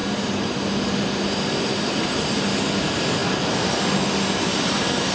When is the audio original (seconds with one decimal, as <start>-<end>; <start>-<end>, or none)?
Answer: 0.0-5.1